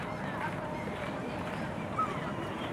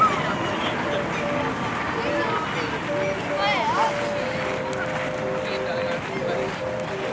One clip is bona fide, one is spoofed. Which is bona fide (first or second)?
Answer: second